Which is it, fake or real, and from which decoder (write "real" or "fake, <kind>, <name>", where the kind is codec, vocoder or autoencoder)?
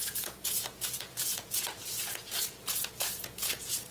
fake, vocoder, Vocos